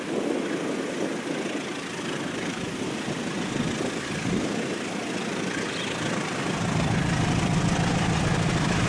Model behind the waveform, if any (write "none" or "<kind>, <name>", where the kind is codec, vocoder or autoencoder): none